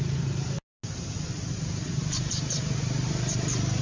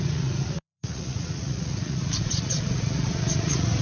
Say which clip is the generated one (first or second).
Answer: second